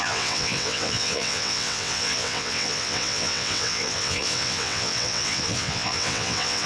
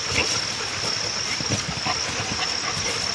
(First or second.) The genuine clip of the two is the second